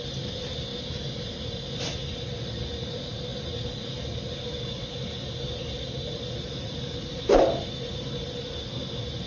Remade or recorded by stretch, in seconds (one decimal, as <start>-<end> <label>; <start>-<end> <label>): 0.0-9.3 recorded